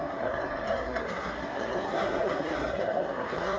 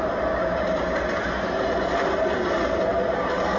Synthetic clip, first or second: first